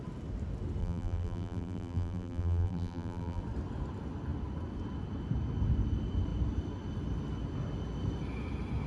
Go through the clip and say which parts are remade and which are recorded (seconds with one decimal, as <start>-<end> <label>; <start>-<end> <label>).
0.0-0.8 recorded; 0.8-3.4 remade; 3.4-8.9 recorded